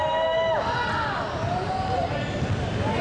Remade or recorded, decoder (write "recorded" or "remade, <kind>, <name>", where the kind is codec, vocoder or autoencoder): recorded